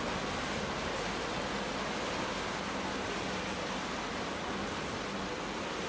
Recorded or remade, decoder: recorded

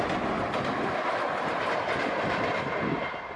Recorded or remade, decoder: recorded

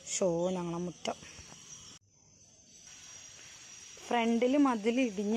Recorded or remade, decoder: recorded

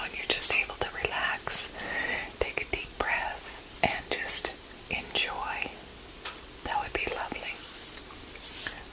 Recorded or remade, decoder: recorded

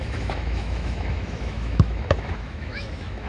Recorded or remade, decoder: remade, autoencoder, DAC-VAE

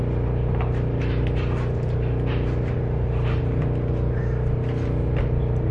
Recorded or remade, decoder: recorded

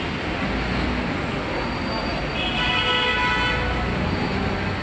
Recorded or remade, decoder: recorded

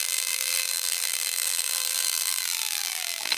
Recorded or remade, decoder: remade, vocoder, BigVGAN v2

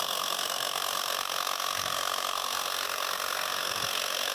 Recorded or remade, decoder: remade, codec, SNAC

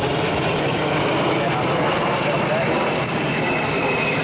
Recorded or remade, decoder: remade, vocoder, BigVGAN v2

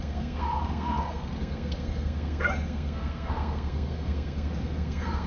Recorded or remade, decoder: remade, codec, SNAC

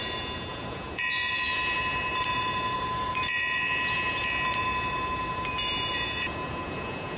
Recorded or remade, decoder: remade, vocoder, Vocos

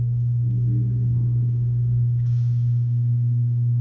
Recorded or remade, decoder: remade, codec, DAC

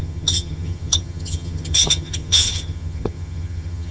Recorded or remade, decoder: remade, vocoder, HiFi-GAN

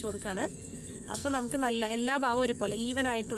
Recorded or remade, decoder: remade, codec, SNAC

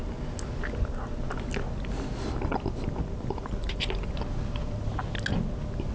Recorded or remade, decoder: recorded